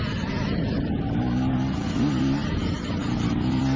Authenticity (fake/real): real